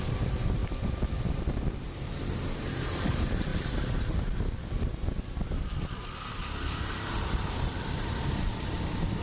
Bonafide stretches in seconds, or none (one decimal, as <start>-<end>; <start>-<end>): 0.6-1.7; 3.5-7.3